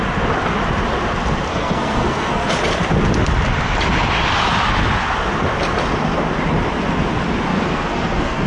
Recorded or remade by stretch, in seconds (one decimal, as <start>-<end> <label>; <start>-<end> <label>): 0.0-1.5 recorded; 1.5-2.5 remade; 2.5-7.5 recorded; 7.5-8.5 remade